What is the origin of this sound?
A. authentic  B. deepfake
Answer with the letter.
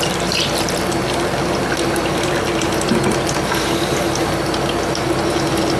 A